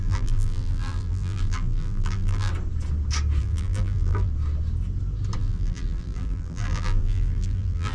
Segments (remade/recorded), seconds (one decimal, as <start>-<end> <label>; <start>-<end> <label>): 0.0-2.5 remade; 2.5-3.4 recorded; 3.4-4.3 remade; 4.3-5.4 recorded; 5.4-7.9 remade